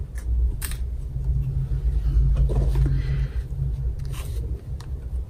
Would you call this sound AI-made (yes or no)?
no